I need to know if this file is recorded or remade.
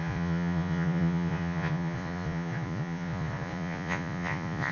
remade